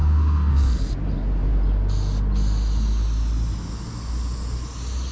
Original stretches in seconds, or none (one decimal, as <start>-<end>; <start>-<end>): 0.9-5.1

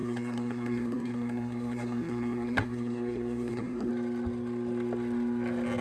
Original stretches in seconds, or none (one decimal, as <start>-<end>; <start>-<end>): 3.9-5.8